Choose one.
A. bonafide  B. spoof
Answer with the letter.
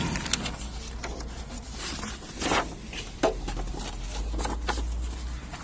A